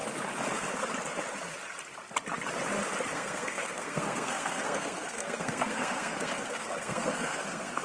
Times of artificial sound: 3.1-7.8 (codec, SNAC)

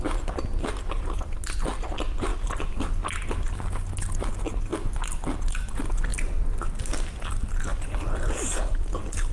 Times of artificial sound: 7.7-9.3 (vocoder, BigVGAN v2)

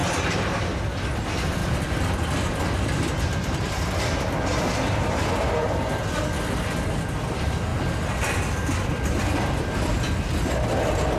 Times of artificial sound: none

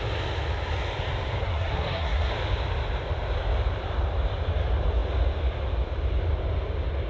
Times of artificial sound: 1.4-2.3 (codec, SNAC)